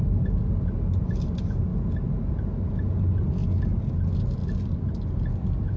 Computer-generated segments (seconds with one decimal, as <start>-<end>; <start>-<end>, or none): none